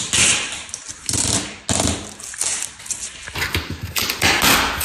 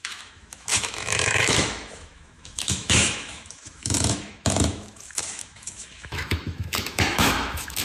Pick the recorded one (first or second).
first